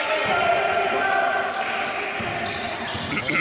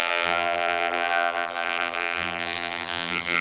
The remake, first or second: second